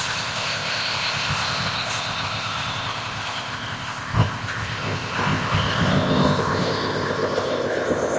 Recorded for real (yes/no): no